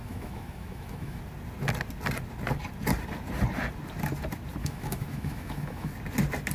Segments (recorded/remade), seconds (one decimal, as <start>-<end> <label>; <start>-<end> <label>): 0.0-1.2 remade; 1.2-4.6 recorded; 4.6-5.9 remade; 5.9-6.5 recorded